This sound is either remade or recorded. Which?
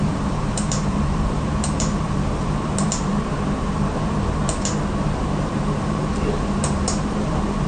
remade